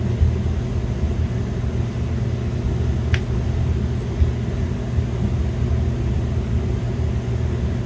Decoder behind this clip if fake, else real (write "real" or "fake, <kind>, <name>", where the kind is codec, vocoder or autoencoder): real